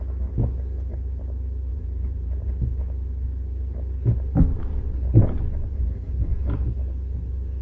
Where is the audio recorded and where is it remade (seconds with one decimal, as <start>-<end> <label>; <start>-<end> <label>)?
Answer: 0.0-1.7 recorded; 1.7-2.5 remade; 2.5-4.5 recorded; 4.5-6.4 remade; 6.4-7.6 recorded